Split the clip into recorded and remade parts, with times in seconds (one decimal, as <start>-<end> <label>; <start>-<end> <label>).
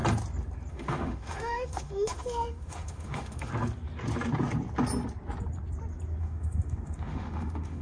0.0-0.7 recorded; 0.7-3.5 remade; 3.5-6.2 recorded; 6.2-7.8 remade